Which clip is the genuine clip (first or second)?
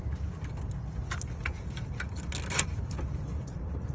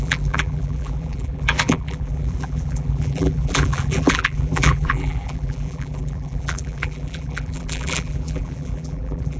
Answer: first